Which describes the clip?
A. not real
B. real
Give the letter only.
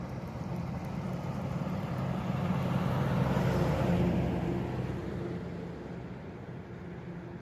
B